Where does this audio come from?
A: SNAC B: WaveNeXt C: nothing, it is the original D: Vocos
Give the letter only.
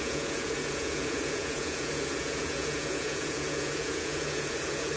D